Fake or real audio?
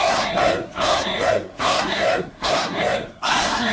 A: fake